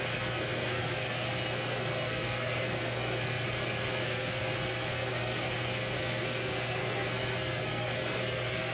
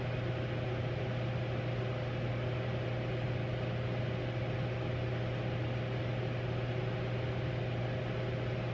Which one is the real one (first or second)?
second